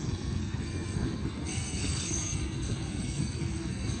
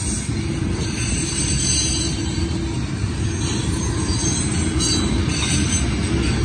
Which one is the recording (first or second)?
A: second